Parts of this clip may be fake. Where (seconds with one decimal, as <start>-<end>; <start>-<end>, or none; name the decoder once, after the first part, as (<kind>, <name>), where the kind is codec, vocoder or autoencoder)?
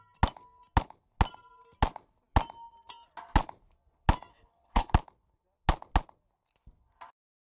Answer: 4.3-4.9 (codec, HILCodec)